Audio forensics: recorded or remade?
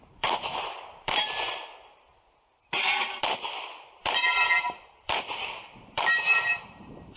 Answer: remade